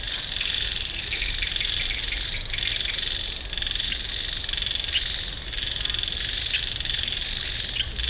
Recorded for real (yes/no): yes